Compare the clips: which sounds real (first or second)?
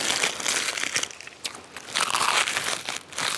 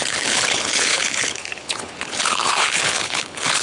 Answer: first